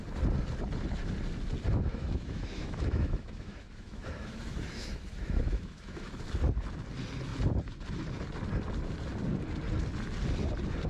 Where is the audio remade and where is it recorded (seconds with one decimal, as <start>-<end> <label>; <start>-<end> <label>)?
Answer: 0.0-1.9 recorded; 1.9-6.2 remade; 6.2-10.9 recorded